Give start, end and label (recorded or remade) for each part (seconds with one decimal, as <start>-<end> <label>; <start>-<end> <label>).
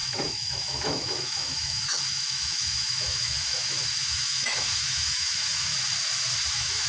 0.0-5.7 remade; 5.7-6.5 recorded; 6.5-6.9 remade